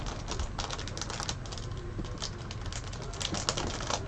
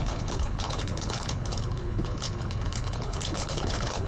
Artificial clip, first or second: second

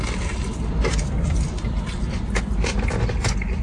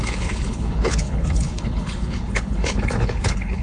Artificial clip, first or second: second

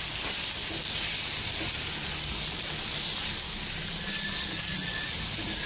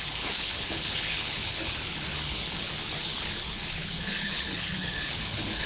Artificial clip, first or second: second